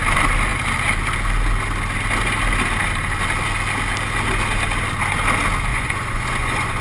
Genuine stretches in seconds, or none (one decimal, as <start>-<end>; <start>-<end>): 0.0-5.7